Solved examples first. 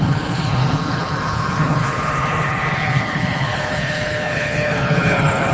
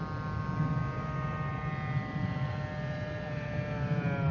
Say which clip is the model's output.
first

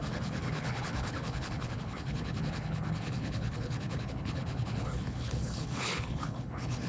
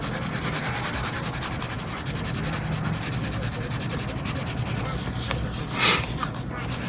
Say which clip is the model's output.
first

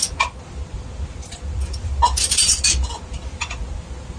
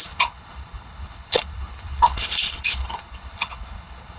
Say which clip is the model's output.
second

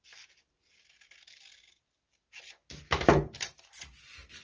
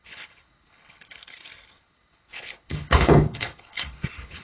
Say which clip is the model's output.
second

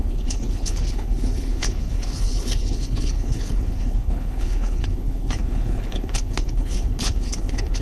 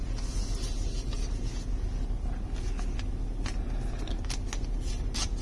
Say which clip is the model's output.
first